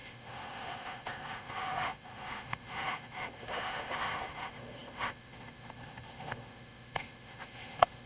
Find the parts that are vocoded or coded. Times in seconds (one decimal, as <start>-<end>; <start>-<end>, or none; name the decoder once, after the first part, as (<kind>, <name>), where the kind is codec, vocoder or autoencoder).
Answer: 0.0-8.1 (autoencoder, DAC-VAE)